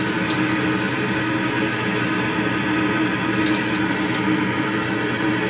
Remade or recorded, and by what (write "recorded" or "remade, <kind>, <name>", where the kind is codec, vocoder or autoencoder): recorded